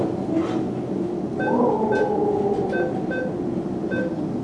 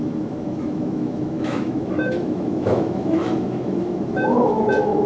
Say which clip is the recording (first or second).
first